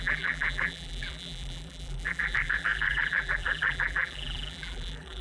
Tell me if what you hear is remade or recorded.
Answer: remade